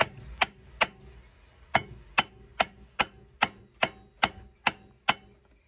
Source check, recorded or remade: recorded